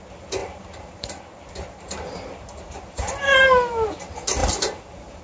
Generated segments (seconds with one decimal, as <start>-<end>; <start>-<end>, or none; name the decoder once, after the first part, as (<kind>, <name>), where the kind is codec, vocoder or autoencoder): 0.4-3.1 (vocoder, BigVGAN v2); 4.4-5.2